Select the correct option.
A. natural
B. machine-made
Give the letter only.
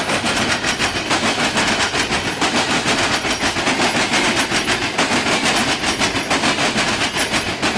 A